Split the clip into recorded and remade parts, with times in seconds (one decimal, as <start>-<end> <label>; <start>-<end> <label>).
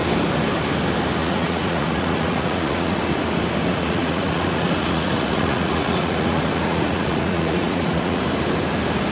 0.0-1.2 recorded; 1.2-3.0 remade; 3.0-3.7 recorded; 3.7-8.2 remade; 8.2-9.1 recorded